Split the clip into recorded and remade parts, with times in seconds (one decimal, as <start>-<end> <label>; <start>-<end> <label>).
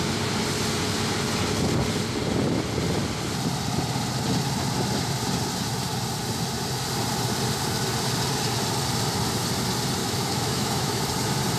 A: 0.0-10.0 recorded; 10.0-11.0 remade; 11.0-11.6 recorded